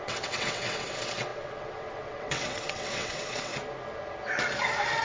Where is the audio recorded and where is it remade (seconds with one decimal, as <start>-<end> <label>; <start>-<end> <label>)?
0.0-3.5 remade; 3.5-5.0 recorded

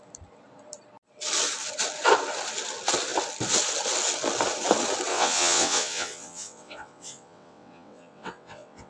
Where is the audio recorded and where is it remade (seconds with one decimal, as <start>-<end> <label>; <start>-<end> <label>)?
0.0-5.1 recorded; 5.1-8.9 remade

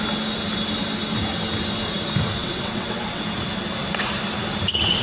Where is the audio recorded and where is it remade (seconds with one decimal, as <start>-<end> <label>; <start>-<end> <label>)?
0.0-2.4 recorded; 2.4-3.2 remade; 3.2-5.0 recorded

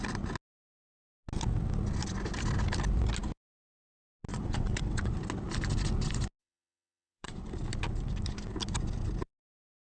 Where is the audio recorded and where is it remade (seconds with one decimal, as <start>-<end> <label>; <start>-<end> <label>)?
0.0-4.3 recorded; 4.3-5.1 remade; 5.1-6.4 recorded; 6.4-7.5 remade; 7.5-9.8 recorded

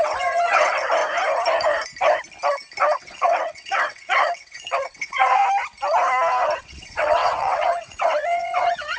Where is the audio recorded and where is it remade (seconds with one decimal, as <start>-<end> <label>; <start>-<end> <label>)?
0.0-1.0 remade; 1.0-3.0 recorded; 3.0-5.4 remade; 5.4-6.6 recorded; 6.6-9.0 remade

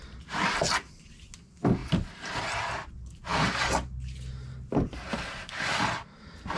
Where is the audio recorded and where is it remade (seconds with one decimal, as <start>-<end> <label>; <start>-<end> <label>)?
0.0-6.6 recorded

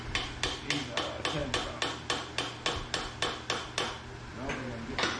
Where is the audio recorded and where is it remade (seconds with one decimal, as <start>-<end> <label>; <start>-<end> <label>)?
0.0-5.2 recorded